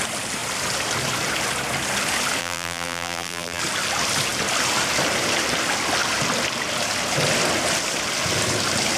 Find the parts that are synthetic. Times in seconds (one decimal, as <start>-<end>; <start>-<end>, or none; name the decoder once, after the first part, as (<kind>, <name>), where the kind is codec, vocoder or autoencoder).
2.4-3.6 (vocoder, BigVGAN v2)